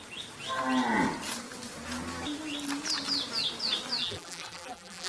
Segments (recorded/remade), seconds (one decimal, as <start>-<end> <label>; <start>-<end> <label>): 0.0-4.0 recorded; 4.0-5.1 remade